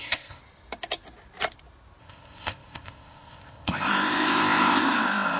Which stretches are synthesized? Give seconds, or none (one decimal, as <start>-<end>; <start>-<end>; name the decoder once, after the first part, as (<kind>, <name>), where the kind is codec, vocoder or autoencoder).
0.0-0.4 (codec, ZipCodec); 2.0-5.4